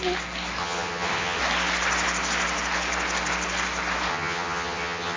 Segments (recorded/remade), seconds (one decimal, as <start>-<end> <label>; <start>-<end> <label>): 0.0-0.6 recorded; 0.6-1.4 remade; 1.4-4.1 recorded; 4.1-5.2 remade